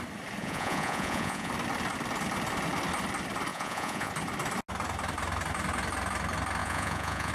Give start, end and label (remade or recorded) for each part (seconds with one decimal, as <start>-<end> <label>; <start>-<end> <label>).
0.0-0.4 recorded; 0.4-1.5 remade; 1.5-3.5 recorded; 3.5-4.1 remade; 4.1-6.6 recorded; 6.6-7.3 remade